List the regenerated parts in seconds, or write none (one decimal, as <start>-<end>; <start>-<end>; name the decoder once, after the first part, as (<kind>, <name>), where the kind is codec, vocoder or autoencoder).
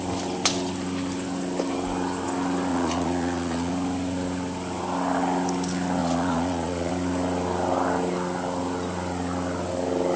2.7-3.7 (vocoder, Vocos); 6.0-6.9